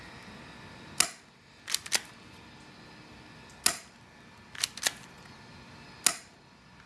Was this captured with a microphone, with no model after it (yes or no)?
yes